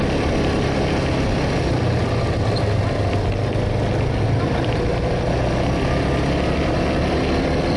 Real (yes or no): yes